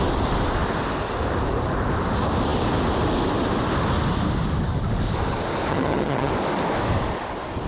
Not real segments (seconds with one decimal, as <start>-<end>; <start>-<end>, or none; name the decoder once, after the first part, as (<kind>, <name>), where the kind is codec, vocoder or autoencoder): 5.7-6.3 (vocoder, HiFi-GAN)